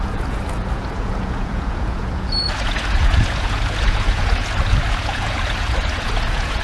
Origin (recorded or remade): remade